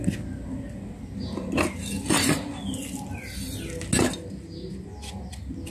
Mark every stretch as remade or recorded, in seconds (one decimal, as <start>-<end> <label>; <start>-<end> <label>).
0.0-5.7 recorded